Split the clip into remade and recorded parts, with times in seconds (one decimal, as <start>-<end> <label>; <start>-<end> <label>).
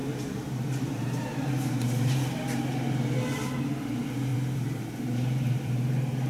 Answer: 0.0-3.6 remade; 3.6-4.3 recorded; 4.3-6.3 remade